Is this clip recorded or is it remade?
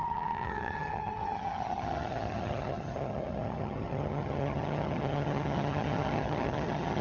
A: remade